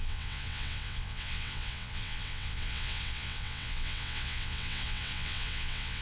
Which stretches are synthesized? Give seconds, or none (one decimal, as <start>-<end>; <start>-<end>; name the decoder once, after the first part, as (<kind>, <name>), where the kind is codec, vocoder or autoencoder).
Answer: 0.0-6.0 (vocoder, WaveNeXt)